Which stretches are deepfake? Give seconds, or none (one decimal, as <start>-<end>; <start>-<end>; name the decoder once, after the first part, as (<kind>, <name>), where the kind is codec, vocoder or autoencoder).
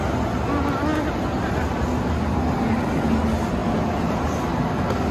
none